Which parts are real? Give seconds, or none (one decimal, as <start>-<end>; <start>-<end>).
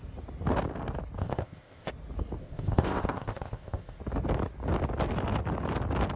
0.0-1.2; 1.9-2.4; 4.0-6.2